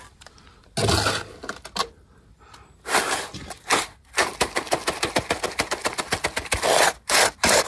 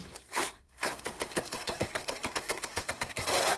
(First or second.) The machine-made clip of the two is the second